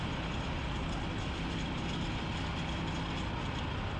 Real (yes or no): yes